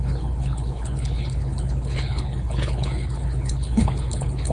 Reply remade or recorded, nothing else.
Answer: remade